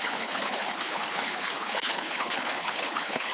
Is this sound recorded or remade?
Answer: remade